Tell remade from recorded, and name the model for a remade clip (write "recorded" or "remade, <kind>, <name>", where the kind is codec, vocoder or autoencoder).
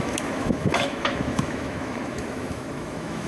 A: remade, autoencoder, DAC-VAE